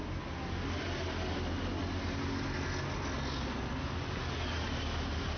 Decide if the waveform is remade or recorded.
recorded